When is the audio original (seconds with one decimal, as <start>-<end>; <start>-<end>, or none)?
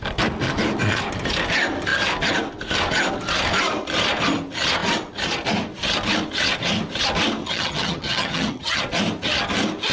0.0-7.4; 8.8-9.9